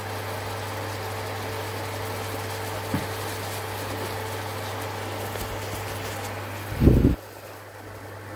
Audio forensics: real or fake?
real